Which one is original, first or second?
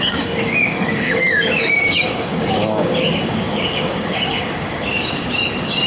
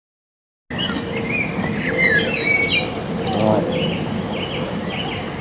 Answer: second